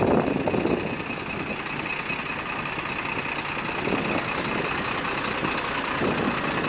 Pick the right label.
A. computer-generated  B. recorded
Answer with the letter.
B